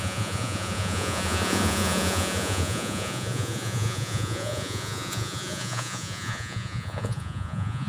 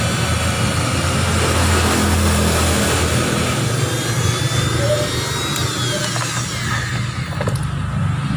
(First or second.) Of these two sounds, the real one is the second